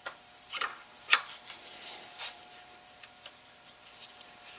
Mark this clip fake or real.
fake